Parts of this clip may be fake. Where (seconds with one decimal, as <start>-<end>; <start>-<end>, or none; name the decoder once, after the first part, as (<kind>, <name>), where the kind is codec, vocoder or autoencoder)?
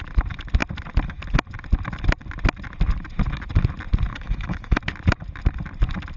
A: 4.1-4.8 (autoencoder, DAC-VAE)